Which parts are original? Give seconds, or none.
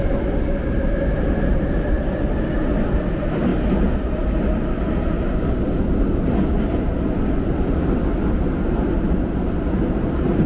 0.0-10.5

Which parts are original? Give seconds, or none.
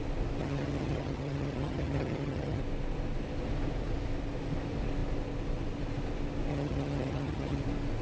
0.0-0.4; 2.6-6.5; 7.6-8.0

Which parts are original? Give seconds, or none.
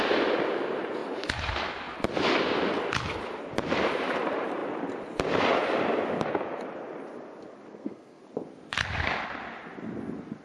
0.0-7.7; 8.2-10.4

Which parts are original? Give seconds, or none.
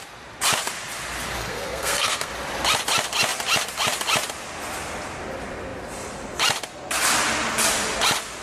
0.0-1.4; 2.3-8.4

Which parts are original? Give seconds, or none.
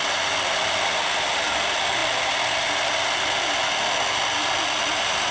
0.0-5.3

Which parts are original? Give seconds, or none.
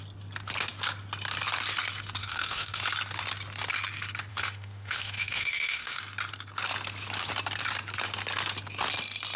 0.0-2.2; 2.8-4.3; 6.0-9.4